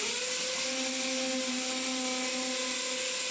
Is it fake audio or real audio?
real